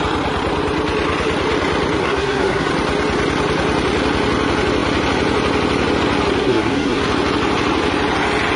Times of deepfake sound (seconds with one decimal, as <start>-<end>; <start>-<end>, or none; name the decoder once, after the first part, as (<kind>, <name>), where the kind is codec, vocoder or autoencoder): 2.0-2.7 (codec, SNAC); 6.4-7.0